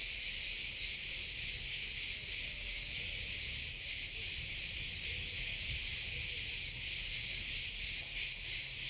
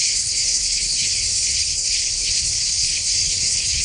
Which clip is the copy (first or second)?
second